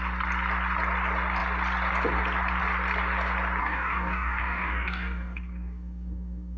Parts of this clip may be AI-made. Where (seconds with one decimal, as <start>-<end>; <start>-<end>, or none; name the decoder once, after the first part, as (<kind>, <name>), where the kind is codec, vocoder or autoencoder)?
3.6-6.6 (codec, DAC)

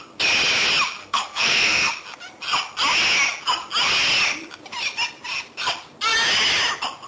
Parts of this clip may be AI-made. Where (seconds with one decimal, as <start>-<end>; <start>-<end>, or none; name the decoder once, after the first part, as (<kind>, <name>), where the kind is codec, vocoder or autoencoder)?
1.0-1.9 (codec, SNAC)

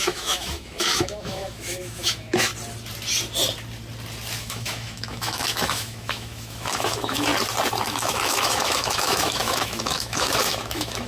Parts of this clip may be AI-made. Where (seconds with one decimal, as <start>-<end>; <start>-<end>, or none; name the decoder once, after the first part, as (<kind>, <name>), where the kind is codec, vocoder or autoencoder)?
0.0-2.5 (autoencoder, DAC-VAE); 4.4-7.3; 7.8-11.1

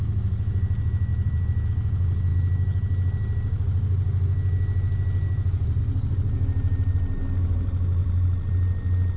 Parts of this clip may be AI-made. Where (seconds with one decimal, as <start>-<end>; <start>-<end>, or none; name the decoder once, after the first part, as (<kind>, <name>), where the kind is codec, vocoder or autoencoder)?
1.1-1.7 (vocoder, BigVGAN v2); 8.0-8.5